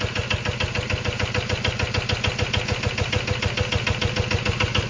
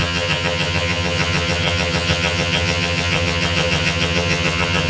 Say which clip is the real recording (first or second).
first